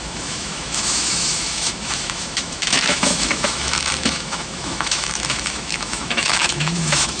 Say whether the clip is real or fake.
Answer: fake